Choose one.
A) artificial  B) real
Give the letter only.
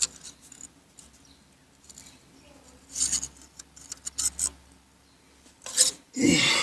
B